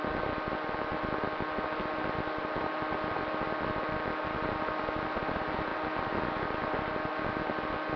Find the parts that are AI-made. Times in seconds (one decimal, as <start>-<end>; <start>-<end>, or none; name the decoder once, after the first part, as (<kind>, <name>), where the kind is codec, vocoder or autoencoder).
none